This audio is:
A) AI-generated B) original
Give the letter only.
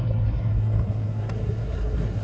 A